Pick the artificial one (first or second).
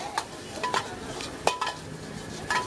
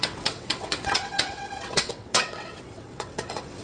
second